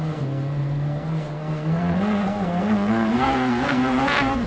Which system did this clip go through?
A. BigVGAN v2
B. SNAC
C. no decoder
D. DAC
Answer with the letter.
B